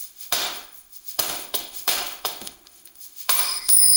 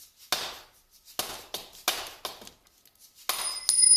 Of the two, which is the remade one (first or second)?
first